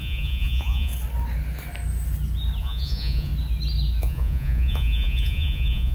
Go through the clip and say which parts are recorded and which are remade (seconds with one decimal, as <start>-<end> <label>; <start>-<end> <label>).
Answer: 0.0-0.9 remade; 0.9-2.6 recorded; 2.6-3.3 remade; 3.3-4.0 recorded; 4.0-5.9 remade